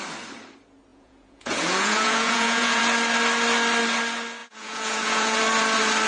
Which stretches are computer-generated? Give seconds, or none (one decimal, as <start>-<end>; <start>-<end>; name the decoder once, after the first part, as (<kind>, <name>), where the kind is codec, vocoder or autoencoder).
0.9-2.8 (vocoder, Vocos); 4.4-5.4